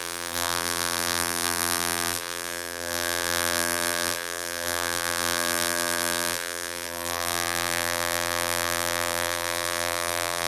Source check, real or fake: fake